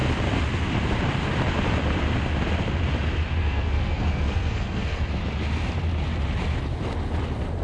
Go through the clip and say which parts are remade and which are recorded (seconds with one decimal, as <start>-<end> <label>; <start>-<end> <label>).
0.0-3.4 recorded; 3.4-5.1 remade; 5.1-7.6 recorded

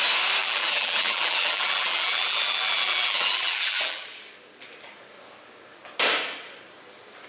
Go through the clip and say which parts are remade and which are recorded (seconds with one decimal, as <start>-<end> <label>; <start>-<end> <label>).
0.0-0.4 recorded; 0.4-4.0 remade; 4.0-7.3 recorded